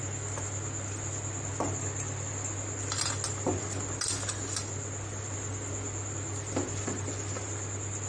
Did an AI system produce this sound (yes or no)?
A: no